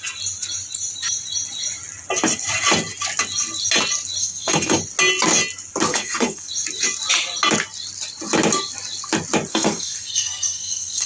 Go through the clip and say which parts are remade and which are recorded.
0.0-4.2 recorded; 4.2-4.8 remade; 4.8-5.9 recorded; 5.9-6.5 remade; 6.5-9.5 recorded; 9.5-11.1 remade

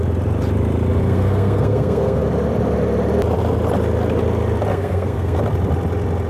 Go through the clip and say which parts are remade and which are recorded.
0.0-1.0 recorded; 1.0-2.2 remade; 2.2-4.7 recorded; 4.7-5.4 remade; 5.4-6.3 recorded

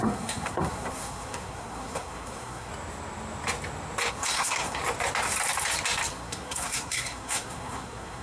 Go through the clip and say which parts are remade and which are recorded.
0.0-2.7 remade; 2.7-4.1 recorded; 4.1-4.8 remade; 4.8-6.1 recorded; 6.1-8.2 remade

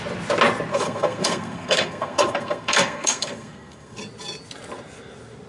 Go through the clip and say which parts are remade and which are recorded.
0.0-0.7 recorded; 0.7-4.0 remade; 4.0-5.5 recorded

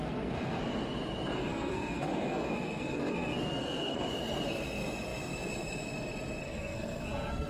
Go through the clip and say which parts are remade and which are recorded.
0.0-0.6 remade; 0.6-1.5 recorded; 1.5-4.1 remade; 4.1-6.4 recorded; 6.4-7.5 remade

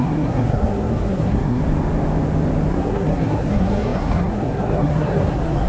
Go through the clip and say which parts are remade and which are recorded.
0.0-1.6 remade; 1.6-2.7 recorded; 2.7-5.7 remade

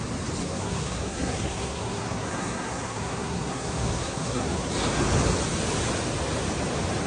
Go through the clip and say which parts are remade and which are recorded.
0.0-0.4 recorded; 0.4-4.7 remade; 4.7-7.1 recorded